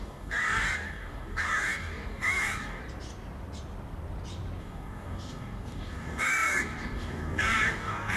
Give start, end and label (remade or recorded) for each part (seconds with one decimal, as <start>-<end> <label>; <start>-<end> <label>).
0.0-2.8 remade; 2.8-4.6 recorded; 4.6-8.2 remade